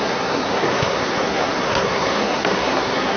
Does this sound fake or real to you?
fake